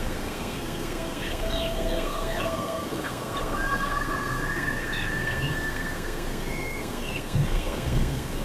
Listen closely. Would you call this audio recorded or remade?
remade